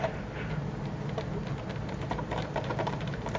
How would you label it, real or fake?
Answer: real